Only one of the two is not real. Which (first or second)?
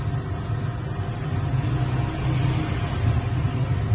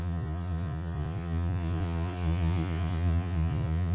second